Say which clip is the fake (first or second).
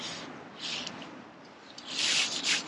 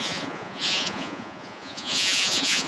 second